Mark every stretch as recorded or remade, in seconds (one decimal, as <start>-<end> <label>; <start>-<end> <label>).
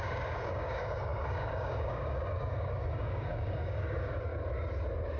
0.0-4.3 remade; 4.3-5.2 recorded